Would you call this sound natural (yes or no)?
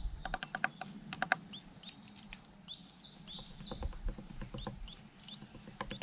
yes